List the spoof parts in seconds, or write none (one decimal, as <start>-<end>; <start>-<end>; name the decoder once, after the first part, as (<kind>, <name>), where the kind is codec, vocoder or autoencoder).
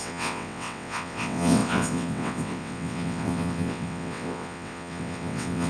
0.0-5.7 (vocoder, WaveNeXt)